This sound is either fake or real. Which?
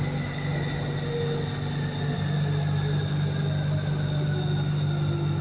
real